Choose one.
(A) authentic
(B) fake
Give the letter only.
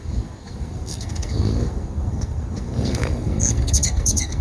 B